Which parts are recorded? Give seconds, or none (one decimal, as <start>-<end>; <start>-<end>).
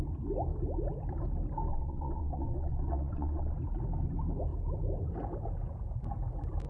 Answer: 0.0-1.7; 3.5-6.7